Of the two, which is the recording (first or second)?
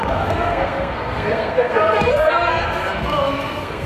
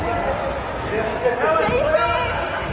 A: second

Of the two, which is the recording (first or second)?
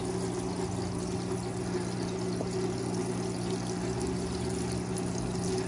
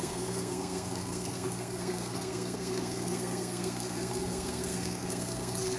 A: first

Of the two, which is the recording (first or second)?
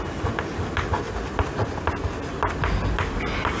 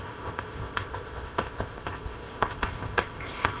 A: first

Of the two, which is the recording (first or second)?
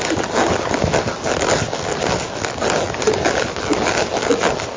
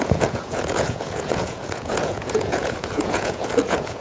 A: first